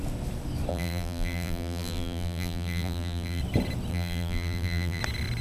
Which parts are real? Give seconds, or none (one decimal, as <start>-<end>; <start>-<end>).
0.0-0.7; 3.4-3.9; 5.0-5.4